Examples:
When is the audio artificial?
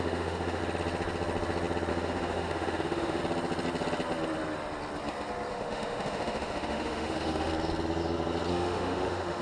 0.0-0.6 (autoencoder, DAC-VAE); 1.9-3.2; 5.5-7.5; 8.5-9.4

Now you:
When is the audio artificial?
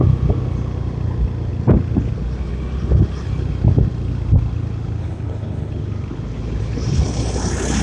5.0-5.7 (codec, HILCodec)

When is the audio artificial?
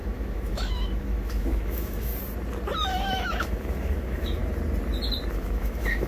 0.0-2.1 (autoencoder, DAC-VAE); 2.9-4.4; 5.3-6.1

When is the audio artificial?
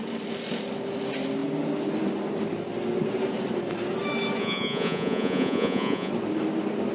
4.4-6.1 (vocoder, Vocos)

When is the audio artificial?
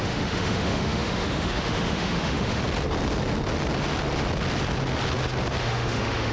0.0-2.6 (autoencoder, DAC-VAE); 5.6-6.3